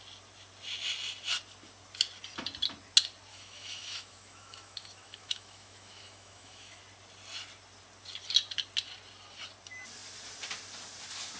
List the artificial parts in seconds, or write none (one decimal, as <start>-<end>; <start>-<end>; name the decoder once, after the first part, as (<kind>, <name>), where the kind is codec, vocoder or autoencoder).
3.3-6.8 (autoencoder, DAC-VAE)